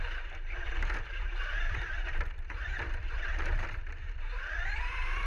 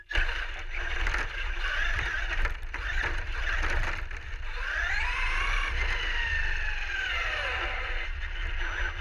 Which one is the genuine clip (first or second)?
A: second